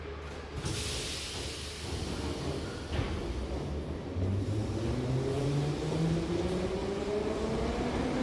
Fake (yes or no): no